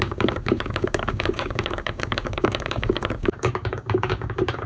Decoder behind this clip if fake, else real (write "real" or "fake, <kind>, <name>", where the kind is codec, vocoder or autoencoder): fake, codec, DAC